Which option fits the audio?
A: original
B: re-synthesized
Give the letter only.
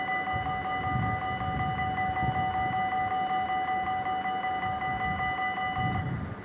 A